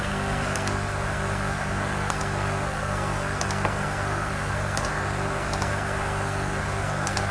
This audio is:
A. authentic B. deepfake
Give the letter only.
B